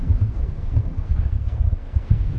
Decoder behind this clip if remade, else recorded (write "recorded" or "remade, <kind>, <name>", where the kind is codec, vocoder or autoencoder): remade, codec, SNAC